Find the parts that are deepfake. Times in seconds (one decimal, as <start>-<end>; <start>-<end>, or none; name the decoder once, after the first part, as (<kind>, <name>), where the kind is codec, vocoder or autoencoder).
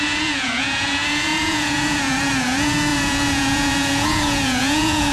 0.0-5.1 (vocoder, Vocos)